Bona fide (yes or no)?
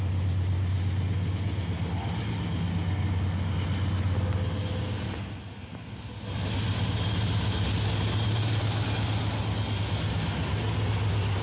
yes